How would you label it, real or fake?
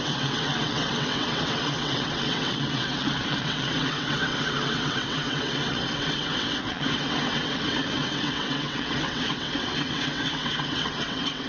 fake